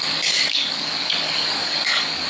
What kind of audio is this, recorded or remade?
remade